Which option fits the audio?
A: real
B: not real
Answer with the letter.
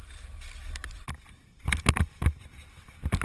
A